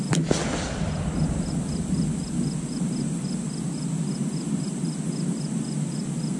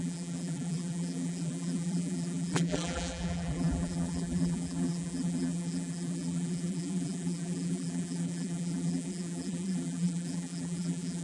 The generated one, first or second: second